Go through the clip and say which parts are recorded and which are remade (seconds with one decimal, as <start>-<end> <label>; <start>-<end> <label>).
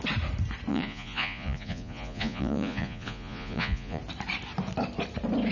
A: 0.0-0.7 recorded; 0.7-4.0 remade; 4.0-5.5 recorded